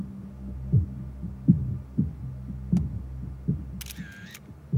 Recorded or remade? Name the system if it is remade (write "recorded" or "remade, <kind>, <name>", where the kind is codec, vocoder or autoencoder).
recorded